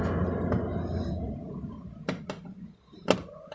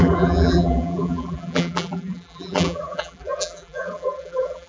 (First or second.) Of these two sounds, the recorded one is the first